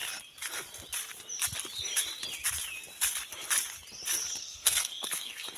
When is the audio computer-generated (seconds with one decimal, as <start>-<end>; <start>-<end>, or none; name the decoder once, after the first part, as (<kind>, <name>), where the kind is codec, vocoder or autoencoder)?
4.4-5.6 (codec, SNAC)